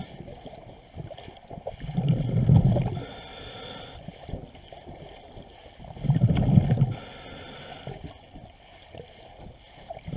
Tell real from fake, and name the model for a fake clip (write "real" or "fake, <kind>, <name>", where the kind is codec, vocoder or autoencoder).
real